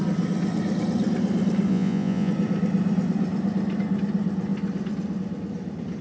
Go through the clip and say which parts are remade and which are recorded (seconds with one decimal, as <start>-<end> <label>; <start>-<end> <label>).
0.0-1.7 recorded; 1.7-2.3 remade; 2.3-6.0 recorded